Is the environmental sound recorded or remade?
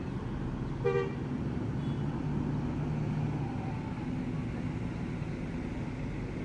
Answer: recorded